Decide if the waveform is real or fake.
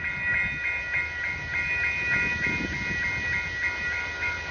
real